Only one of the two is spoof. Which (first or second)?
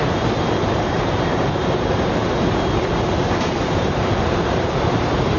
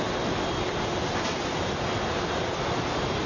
first